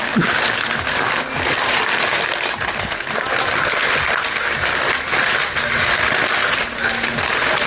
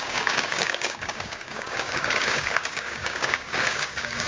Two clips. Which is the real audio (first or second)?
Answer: first